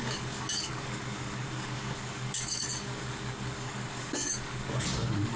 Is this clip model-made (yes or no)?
yes